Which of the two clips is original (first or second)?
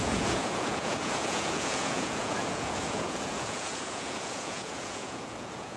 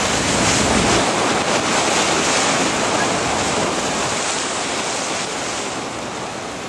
second